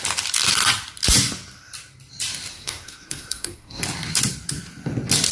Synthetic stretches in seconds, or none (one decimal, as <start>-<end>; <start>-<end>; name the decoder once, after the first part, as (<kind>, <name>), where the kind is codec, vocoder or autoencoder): 2.5-3.8 (codec, SNAC)